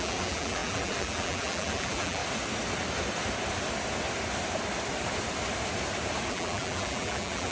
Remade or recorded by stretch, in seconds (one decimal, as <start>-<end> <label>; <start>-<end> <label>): 0.0-2.2 remade; 2.2-6.3 recorded; 6.3-7.5 remade

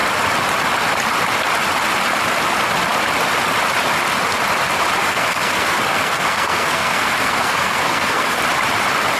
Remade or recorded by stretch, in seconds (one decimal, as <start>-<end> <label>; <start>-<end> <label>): 0.0-5.0 recorded; 5.0-8.4 remade; 8.4-9.2 recorded

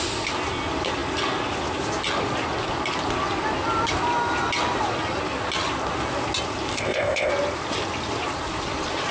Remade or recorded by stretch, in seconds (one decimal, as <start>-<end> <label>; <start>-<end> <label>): 0.0-6.7 recorded; 6.7-7.3 remade; 7.3-9.1 recorded

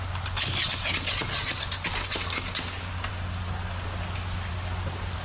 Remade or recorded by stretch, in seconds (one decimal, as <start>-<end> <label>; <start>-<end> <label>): 0.0-5.2 recorded

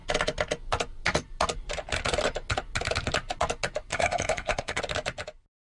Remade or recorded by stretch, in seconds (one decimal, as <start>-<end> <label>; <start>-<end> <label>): 0.0-3.9 recorded; 3.9-4.8 remade; 4.8-5.6 recorded